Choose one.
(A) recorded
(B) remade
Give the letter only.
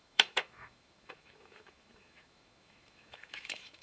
B